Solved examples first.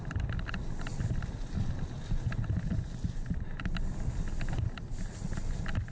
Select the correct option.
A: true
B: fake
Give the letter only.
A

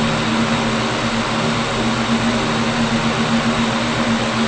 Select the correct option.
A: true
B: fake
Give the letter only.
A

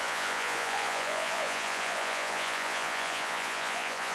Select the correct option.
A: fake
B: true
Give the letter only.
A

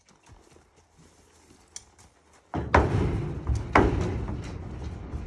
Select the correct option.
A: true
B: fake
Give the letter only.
A